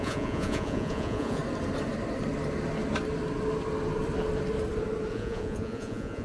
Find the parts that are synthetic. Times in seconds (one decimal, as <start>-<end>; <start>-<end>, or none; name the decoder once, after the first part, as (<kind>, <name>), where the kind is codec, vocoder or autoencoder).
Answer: 0.0-1.4 (vocoder, Vocos); 5.1-6.2